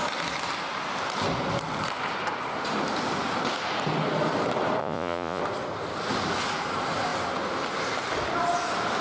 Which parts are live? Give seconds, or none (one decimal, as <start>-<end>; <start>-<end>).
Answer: 0.0-4.8; 5.4-9.0